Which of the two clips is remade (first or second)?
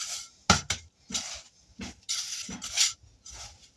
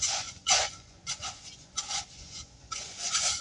second